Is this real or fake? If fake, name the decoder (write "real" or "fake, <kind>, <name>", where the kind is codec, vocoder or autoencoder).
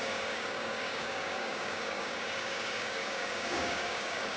fake, codec, DAC